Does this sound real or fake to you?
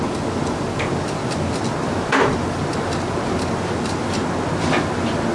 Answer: real